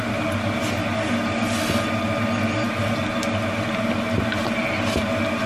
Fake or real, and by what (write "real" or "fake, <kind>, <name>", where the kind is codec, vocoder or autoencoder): real